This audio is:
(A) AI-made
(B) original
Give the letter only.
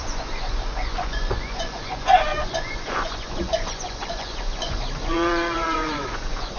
A